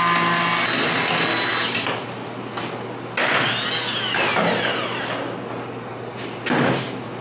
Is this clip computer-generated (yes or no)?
no